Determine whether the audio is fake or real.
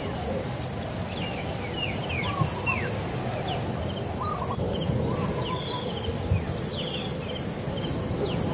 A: real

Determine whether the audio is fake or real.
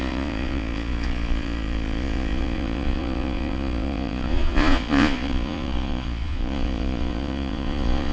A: fake